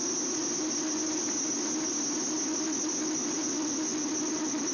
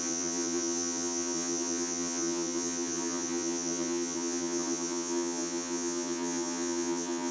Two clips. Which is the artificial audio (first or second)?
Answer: second